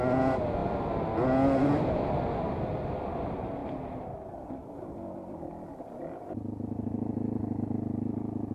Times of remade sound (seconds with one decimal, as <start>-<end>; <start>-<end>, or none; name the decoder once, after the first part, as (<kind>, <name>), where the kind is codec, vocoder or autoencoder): none